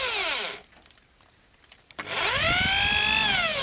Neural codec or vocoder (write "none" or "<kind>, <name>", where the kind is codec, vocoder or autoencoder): none